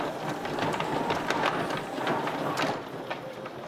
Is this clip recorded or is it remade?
recorded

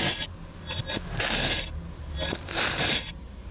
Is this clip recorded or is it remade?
recorded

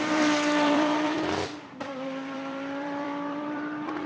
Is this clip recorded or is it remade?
remade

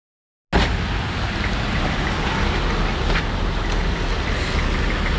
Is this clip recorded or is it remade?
recorded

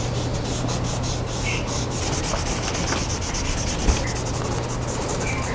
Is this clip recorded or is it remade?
recorded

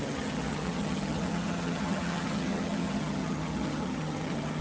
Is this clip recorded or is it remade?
remade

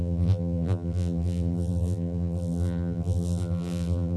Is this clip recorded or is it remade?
remade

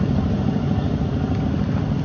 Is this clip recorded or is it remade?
recorded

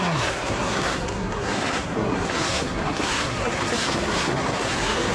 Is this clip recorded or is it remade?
remade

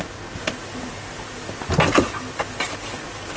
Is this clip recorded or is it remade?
recorded